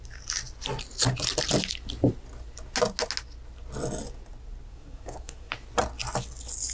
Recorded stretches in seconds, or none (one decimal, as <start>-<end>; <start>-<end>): 0.0-4.7; 5.5-6.7